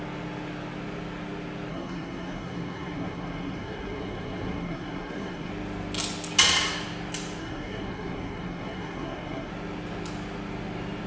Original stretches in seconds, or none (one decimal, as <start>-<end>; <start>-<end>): 0.0-1.7; 5.5-7.4; 9.5-11.1